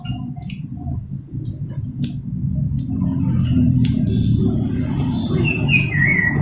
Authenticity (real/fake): fake